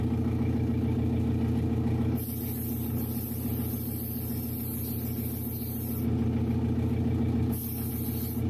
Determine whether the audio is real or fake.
real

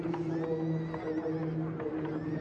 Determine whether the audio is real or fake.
real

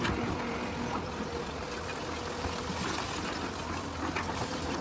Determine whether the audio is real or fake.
real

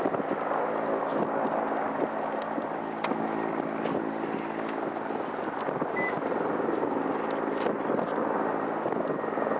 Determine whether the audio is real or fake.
real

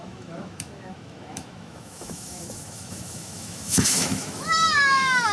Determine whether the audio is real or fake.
fake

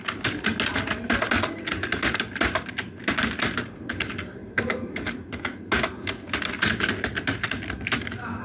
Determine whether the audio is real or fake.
real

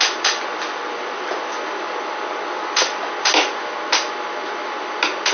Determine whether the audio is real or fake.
real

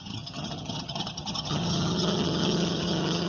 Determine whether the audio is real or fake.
fake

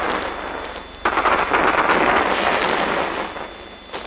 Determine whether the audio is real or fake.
real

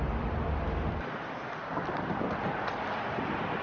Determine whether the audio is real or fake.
real